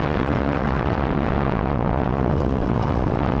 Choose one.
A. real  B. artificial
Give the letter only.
B